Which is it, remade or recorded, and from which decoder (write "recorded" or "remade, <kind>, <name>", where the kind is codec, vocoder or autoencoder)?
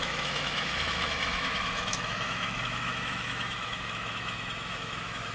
remade, autoencoder, DAC-VAE